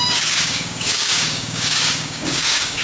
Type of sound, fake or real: fake